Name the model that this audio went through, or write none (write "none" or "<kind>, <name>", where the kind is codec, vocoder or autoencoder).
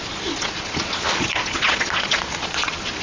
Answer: vocoder, Vocos